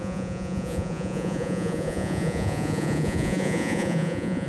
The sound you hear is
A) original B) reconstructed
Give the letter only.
B